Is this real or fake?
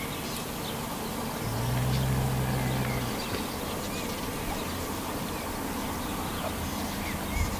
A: real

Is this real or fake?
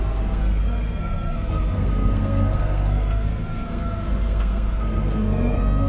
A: fake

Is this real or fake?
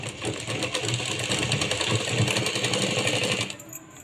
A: real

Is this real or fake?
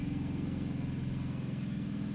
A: fake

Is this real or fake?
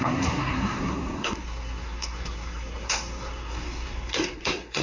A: fake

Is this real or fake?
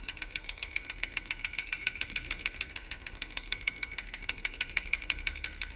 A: fake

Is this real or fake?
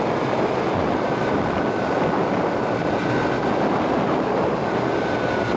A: real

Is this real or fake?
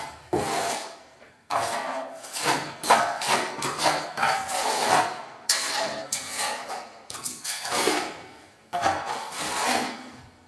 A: fake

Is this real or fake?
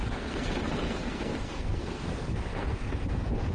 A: fake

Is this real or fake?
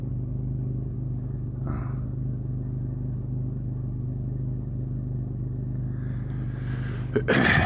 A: real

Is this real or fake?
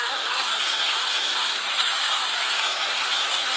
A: fake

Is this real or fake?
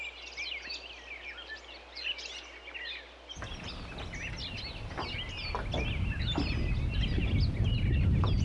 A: real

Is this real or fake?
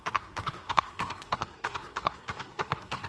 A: fake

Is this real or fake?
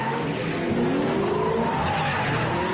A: real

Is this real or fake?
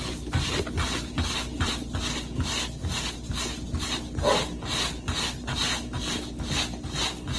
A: real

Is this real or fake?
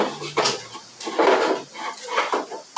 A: real